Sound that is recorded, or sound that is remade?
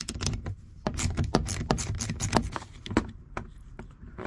remade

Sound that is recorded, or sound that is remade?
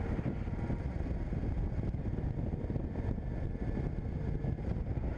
recorded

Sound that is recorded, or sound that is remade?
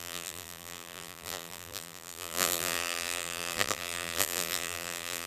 remade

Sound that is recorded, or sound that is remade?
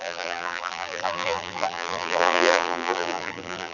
remade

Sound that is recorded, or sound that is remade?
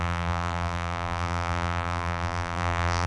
remade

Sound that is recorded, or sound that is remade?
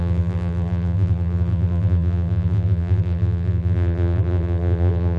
remade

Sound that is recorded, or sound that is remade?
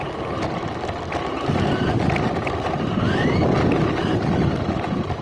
recorded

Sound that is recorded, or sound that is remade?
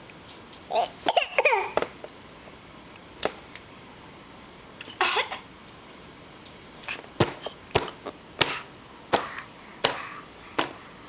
remade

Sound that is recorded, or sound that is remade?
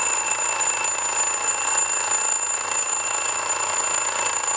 recorded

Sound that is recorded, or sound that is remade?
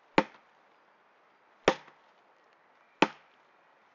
recorded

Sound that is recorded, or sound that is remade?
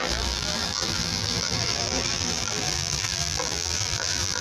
remade